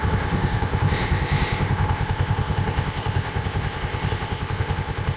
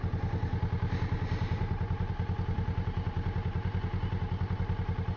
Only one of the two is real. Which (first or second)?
second